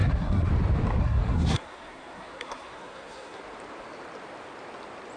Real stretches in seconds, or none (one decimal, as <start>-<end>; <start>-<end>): 0.5-1.0; 3.4-5.2